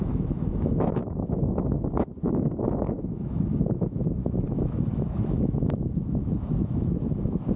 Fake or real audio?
fake